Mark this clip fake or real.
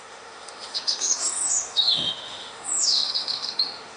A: fake